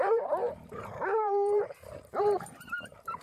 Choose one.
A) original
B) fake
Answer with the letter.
B